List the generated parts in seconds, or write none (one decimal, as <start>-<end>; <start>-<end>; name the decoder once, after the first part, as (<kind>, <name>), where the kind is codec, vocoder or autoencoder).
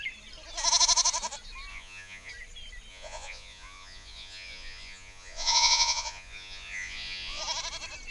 1.7-2.3 (vocoder, Vocos); 2.9-7.4